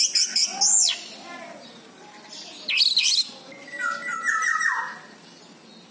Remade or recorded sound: recorded